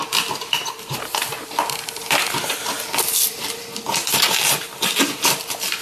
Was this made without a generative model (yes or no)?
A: no